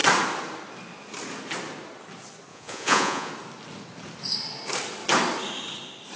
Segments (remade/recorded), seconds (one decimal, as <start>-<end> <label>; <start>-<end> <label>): 0.0-2.5 recorded; 2.5-3.3 remade; 3.3-6.2 recorded